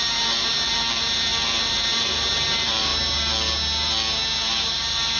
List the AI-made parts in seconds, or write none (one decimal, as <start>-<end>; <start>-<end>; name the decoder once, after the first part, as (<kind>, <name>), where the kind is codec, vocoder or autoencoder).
0.0-2.9 (vocoder, BigVGAN v2); 4.5-5.2